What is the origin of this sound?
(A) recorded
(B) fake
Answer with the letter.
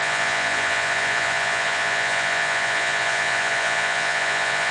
B